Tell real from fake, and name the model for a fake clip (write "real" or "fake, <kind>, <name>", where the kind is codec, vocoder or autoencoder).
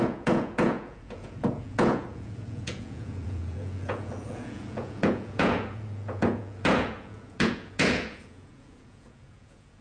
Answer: fake, vocoder, Vocos